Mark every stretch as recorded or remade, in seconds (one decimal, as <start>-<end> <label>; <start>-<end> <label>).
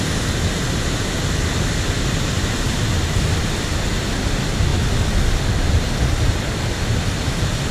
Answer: 0.0-7.7 recorded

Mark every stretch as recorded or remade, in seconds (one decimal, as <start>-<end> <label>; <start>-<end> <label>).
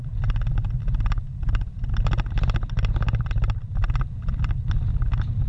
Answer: 0.0-5.5 recorded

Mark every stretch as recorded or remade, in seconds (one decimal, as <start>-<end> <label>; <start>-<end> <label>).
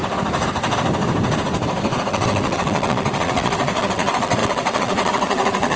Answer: 0.0-2.1 recorded; 2.1-5.8 remade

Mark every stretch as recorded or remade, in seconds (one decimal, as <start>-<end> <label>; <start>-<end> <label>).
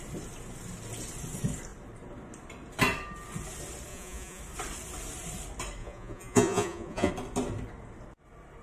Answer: 0.0-3.9 recorded; 3.9-4.4 remade; 4.4-5.8 recorded; 5.8-7.1 remade; 7.1-8.6 recorded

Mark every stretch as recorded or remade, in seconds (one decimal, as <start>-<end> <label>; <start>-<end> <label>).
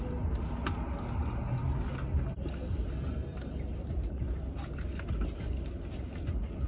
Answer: 0.0-6.7 recorded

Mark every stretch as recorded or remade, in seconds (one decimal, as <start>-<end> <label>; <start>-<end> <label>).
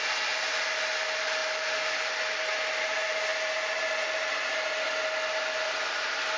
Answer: 0.0-6.4 recorded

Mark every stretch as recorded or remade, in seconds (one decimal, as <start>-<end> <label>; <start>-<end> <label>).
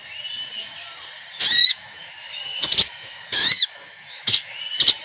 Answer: 0.0-1.6 recorded; 1.6-4.6 remade; 4.6-5.0 recorded